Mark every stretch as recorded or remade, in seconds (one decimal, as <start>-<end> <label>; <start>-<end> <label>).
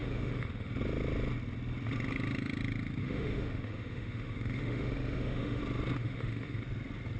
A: 0.0-0.7 remade; 0.7-3.0 recorded; 3.0-5.6 remade; 5.6-6.0 recorded; 6.0-6.6 remade; 6.6-7.2 recorded